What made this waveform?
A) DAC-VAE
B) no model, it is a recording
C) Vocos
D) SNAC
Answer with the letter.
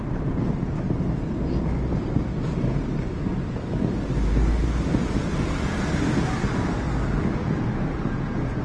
B